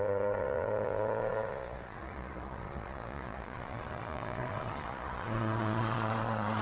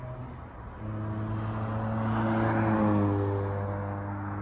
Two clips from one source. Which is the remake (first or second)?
first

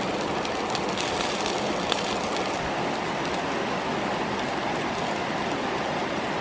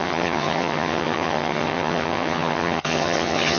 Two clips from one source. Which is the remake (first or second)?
second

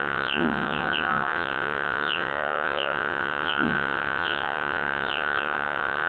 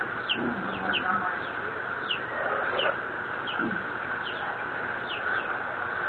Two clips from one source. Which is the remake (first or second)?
first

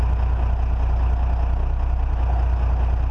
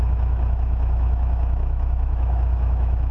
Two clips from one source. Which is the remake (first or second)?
second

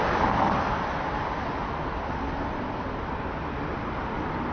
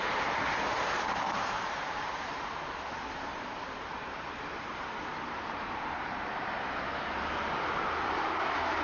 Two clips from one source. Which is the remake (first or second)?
second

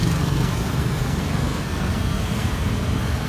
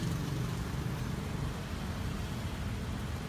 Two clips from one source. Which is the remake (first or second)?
first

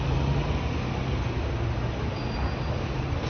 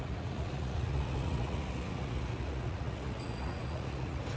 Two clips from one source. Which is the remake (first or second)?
second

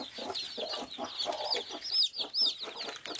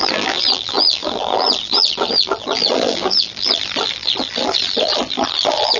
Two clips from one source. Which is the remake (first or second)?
second